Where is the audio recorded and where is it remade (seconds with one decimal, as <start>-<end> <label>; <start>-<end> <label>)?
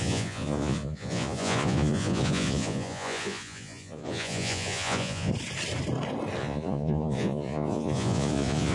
0.0-5.3 remade; 5.3-6.4 recorded; 6.4-8.7 remade